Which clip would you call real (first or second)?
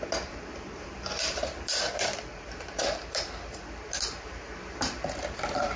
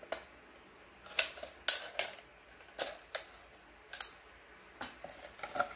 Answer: second